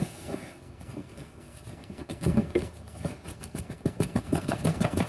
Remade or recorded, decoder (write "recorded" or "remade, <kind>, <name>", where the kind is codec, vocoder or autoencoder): remade, codec, SNAC